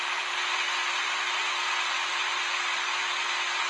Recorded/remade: recorded